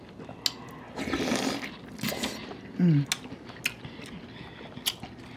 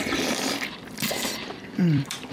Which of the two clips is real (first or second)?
first